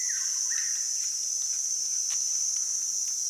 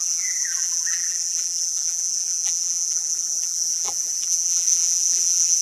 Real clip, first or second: first